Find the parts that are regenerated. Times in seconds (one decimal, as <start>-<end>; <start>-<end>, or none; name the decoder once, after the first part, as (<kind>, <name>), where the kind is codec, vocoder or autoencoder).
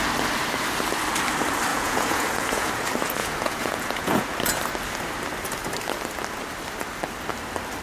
1.7-2.7 (vocoder, Vocos); 3.2-4.3